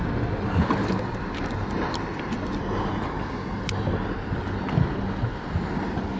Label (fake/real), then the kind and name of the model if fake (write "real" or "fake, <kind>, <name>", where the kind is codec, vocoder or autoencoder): real